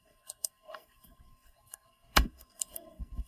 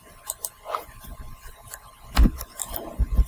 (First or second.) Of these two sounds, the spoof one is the first